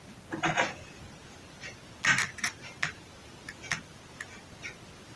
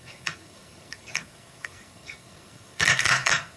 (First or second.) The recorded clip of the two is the first